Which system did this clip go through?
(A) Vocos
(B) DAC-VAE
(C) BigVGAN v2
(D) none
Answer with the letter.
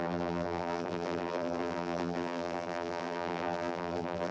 C